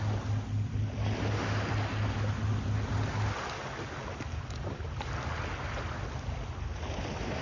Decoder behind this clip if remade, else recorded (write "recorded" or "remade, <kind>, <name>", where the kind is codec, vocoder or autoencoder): recorded